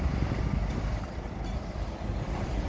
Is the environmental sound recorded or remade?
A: remade